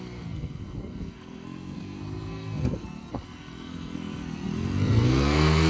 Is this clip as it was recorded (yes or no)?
no